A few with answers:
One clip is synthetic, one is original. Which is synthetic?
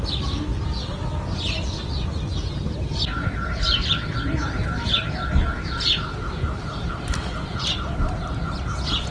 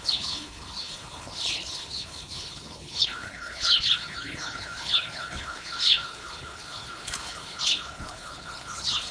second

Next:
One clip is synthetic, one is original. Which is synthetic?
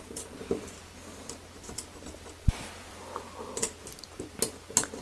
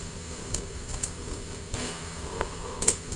second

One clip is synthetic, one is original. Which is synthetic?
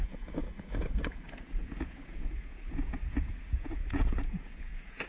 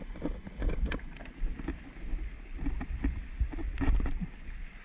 first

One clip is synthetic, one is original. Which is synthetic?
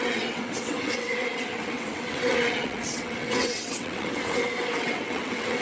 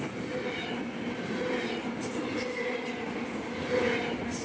first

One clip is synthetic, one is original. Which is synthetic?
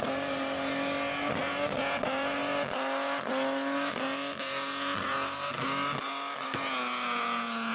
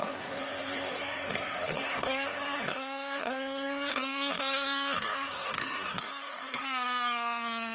second